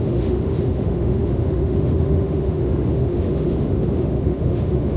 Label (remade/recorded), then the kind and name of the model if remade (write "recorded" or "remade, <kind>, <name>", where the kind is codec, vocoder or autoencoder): remade, autoencoder, DAC-VAE